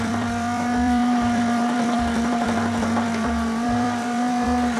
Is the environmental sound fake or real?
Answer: fake